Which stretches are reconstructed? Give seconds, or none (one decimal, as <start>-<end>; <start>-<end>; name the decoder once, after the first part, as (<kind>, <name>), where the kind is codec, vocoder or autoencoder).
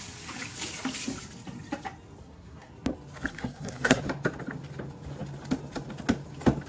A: 2.2-2.7 (codec, SNAC); 3.3-4.0